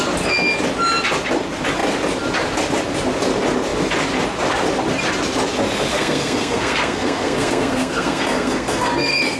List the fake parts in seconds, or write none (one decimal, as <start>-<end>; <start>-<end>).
5.9-9.4